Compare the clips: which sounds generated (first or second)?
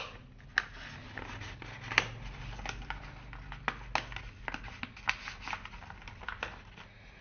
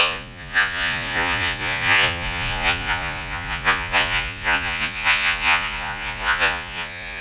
second